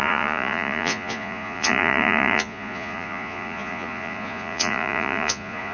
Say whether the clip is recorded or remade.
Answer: remade